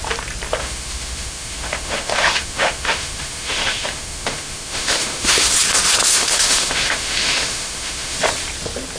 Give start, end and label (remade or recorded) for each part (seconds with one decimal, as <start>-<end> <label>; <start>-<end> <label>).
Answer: 0.0-0.6 recorded; 0.6-5.5 remade; 5.5-6.0 recorded; 6.0-8.2 remade; 8.2-9.0 recorded